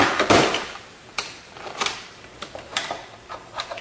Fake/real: fake